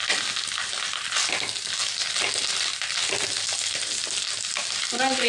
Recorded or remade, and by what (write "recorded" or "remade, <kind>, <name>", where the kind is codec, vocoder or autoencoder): recorded